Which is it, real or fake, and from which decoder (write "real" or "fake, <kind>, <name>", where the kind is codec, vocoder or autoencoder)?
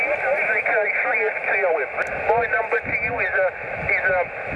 real